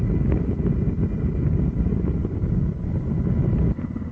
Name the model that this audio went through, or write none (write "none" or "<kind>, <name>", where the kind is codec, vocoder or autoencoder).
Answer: none